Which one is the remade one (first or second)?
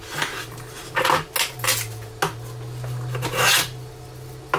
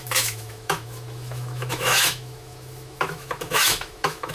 second